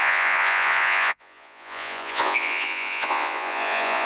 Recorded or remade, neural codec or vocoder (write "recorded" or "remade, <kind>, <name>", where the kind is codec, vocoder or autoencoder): remade, vocoder, Vocos